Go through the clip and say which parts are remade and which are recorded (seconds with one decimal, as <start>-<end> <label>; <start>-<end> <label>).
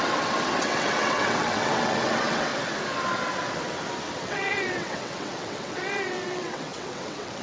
0.0-2.5 remade; 2.5-4.2 recorded; 4.2-7.4 remade